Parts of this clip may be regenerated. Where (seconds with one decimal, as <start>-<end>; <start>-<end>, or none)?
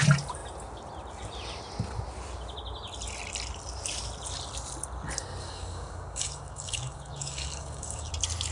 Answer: 5.4-8.1